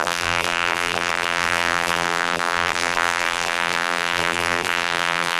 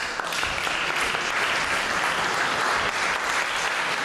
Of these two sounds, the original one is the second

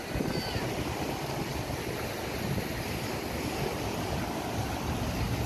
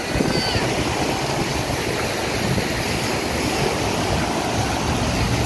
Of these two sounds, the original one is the second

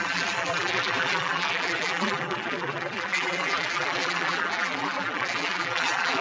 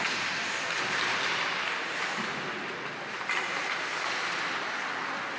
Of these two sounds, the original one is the second